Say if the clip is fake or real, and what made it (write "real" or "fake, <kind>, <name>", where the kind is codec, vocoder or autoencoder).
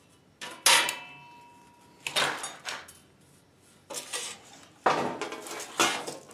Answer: real